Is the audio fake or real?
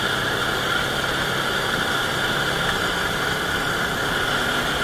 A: real